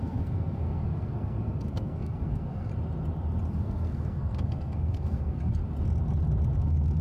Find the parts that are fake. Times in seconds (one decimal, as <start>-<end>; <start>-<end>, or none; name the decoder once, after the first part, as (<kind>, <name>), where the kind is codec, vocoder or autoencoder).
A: 0.0-2.7 (codec, SNAC); 3.5-5.6; 6.6-7.0

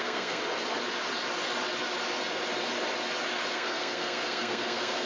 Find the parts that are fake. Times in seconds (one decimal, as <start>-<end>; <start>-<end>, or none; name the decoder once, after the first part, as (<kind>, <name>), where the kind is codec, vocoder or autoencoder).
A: 0.0-0.4 (codec, SNAC); 3.5-5.1

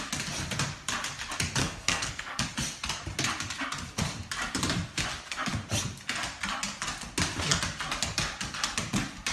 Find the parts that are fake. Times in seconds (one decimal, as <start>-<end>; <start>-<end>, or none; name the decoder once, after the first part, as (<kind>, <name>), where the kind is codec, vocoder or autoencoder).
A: 1.6-2.4 (codec, SNAC)

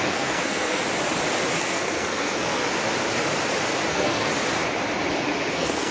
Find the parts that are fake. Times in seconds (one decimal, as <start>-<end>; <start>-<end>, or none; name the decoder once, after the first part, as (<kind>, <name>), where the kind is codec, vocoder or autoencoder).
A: 0.0-0.8 (codec, SNAC); 1.6-2.6; 3.9-4.3; 5.5-5.9

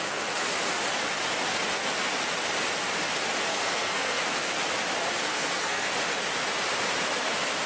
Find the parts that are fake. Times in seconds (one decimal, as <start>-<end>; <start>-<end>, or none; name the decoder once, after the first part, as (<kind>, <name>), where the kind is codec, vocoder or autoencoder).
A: 3.5-4.2 (codec, SNAC); 5.3-5.9

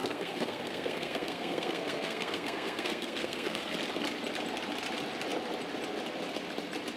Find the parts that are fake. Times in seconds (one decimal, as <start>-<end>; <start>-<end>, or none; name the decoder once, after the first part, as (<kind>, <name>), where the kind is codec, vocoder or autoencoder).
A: 0.0-3.7 (codec, SNAC)

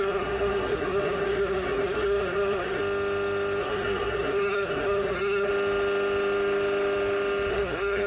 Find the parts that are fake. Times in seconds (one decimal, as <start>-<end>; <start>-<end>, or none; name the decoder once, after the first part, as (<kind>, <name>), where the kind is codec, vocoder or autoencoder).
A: 0.0-2.8 (codec, SNAC); 3.6-5.5; 7.5-8.1